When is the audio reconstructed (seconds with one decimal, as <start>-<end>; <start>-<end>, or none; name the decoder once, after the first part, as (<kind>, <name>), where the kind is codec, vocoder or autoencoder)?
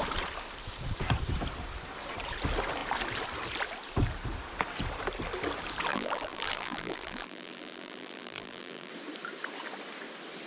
5.9-8.9 (vocoder, BigVGAN v2)